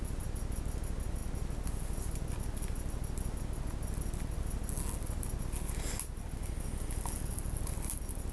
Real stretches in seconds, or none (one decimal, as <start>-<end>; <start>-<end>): 0.0-8.3

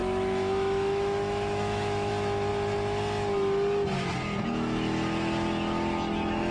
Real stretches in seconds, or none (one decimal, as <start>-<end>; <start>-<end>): 2.1-6.5

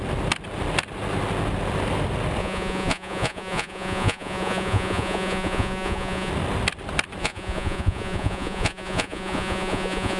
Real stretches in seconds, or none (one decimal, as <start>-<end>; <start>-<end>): 0.0-2.4; 6.3-7.2

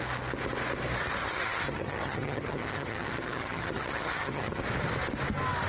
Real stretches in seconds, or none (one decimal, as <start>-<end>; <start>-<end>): 0.0-1.2; 4.6-5.7